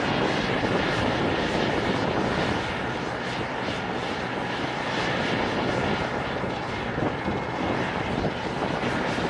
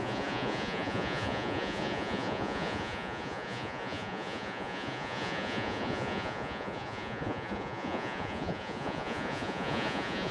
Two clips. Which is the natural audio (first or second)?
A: first